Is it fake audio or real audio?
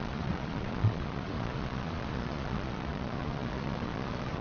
fake